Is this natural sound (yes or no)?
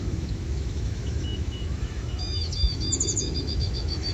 no